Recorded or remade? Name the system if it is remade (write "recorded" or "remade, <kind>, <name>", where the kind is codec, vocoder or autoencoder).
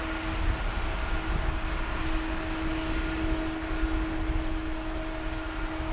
recorded